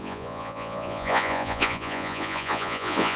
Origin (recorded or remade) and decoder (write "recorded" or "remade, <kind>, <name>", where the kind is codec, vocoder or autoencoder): remade, vocoder, Vocos